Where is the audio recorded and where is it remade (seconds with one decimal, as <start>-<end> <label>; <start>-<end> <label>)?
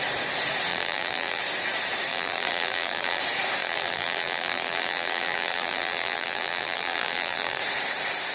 0.0-0.7 recorded; 0.7-1.4 remade; 1.4-2.1 recorded; 2.1-3.2 remade; 3.2-3.6 recorded; 3.6-7.6 remade; 7.6-8.3 recorded